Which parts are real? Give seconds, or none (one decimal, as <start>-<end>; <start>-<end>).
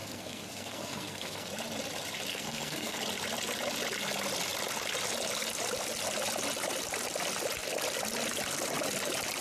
1.5-2.3; 3.0-9.4